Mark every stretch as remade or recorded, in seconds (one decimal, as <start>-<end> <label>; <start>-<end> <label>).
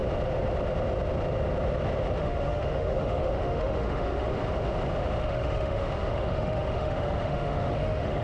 0.0-2.2 recorded; 2.2-4.3 remade; 4.3-5.2 recorded; 5.2-8.2 remade